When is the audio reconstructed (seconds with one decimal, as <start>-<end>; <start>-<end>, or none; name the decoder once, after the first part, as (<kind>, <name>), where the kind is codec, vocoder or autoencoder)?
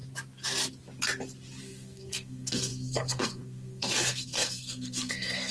1.6-5.5 (codec, SNAC)